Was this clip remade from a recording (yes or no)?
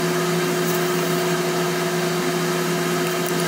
no